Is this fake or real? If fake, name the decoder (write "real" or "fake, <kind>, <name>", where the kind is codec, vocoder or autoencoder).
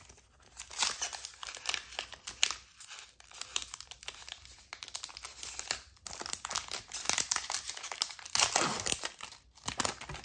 real